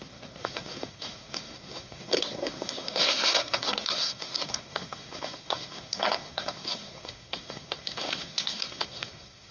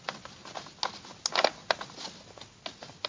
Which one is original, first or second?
second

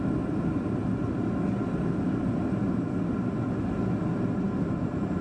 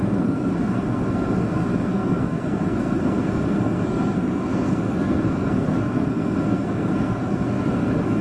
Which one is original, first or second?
first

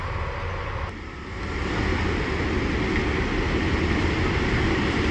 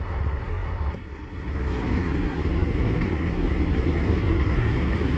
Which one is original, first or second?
first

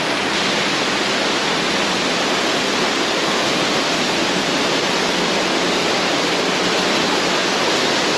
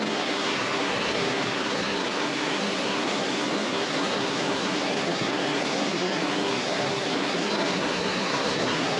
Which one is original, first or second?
first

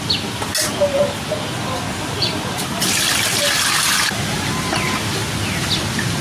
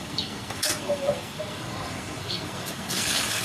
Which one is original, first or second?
first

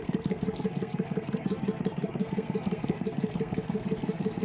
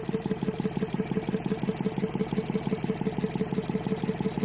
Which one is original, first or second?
second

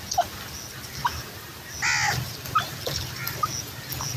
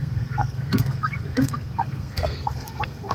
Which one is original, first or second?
first